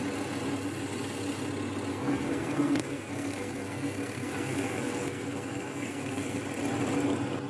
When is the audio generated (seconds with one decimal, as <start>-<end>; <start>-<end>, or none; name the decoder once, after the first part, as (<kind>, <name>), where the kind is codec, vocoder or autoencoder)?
1.9-6.4 (codec, SNAC)